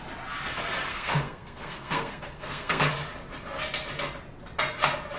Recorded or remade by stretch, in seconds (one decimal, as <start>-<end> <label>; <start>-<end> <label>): 0.0-0.9 recorded; 0.9-2.9 remade; 2.9-5.2 recorded